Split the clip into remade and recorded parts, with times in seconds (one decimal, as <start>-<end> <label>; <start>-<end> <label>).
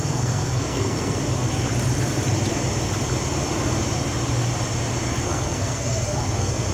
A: 0.0-1.2 remade; 1.2-5.2 recorded; 5.2-6.7 remade